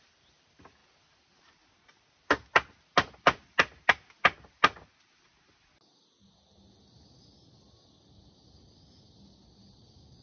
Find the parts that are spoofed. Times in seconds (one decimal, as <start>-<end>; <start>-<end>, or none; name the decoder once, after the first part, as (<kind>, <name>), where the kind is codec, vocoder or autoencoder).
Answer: none